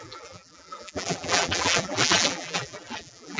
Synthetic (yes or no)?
yes